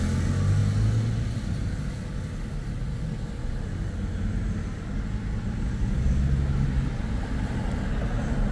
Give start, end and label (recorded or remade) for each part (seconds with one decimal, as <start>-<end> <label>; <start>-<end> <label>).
0.0-8.5 recorded